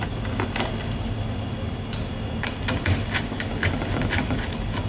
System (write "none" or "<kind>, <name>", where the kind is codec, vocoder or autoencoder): none